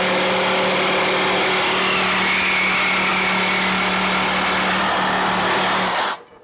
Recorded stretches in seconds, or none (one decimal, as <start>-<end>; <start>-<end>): 0.0-6.4